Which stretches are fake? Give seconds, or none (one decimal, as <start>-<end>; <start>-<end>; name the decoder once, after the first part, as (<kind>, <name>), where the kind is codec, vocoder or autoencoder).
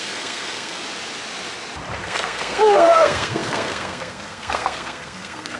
0.0-0.8 (codec, SNAC); 2.0-5.6